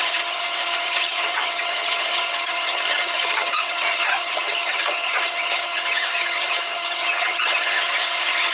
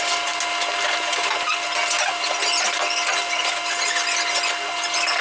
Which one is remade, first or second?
first